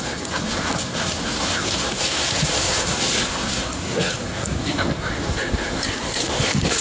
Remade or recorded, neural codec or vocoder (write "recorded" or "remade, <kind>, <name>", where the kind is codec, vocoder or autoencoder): remade, codec, SNAC